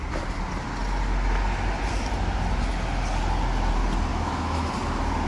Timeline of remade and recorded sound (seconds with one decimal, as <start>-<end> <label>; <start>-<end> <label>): 0.0-4.1 recorded; 4.1-4.7 remade; 4.7-5.3 recorded